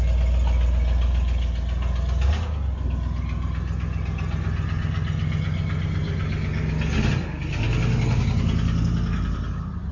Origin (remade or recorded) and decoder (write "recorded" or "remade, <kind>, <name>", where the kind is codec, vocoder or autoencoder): recorded